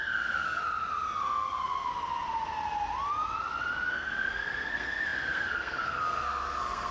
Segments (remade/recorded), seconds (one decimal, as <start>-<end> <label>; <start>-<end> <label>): 0.0-0.6 remade; 0.6-1.2 recorded; 1.2-1.9 remade; 1.9-3.9 recorded; 3.9-6.9 remade